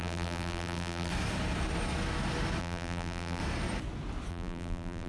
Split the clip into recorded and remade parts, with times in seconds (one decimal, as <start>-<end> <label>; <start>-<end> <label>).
0.0-1.1 remade; 1.1-2.6 recorded; 2.6-3.4 remade; 3.4-4.3 recorded; 4.3-5.1 remade